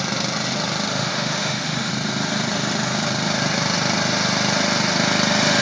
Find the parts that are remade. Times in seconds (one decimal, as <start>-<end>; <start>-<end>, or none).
1.0-1.9